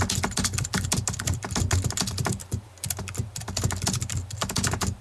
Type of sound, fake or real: real